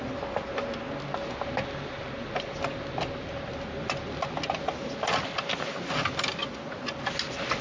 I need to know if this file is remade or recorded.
recorded